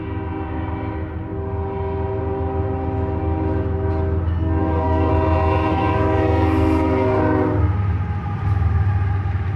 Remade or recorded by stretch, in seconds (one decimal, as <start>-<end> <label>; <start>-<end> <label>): 0.0-4.6 recorded; 4.6-5.1 remade; 5.1-5.7 recorded; 5.7-7.2 remade; 7.2-9.6 recorded